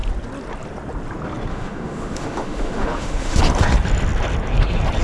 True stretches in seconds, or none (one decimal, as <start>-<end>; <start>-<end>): 0.0-1.5; 3.4-5.0